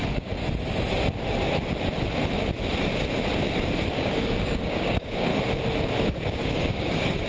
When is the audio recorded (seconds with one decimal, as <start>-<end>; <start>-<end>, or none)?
0.4-3.9; 5.3-6.0